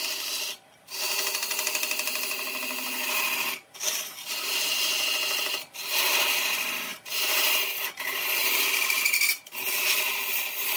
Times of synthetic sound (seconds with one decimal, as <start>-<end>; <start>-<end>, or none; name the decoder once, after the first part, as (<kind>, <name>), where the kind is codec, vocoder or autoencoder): 6.9-7.9 (vocoder, BigVGAN v2); 8.4-9.7